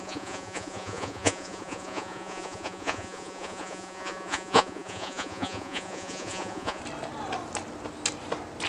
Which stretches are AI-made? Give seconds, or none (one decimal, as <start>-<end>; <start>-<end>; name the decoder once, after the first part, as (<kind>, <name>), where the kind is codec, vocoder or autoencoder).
0.0-6.8 (vocoder, Vocos)